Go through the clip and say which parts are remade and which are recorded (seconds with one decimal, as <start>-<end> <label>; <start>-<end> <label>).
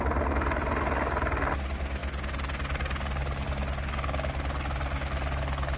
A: 0.0-5.8 recorded